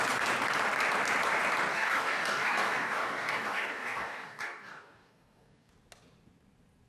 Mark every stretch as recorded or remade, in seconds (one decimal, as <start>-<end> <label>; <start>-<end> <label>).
0.0-1.7 recorded; 1.7-5.7 remade; 5.7-6.9 recorded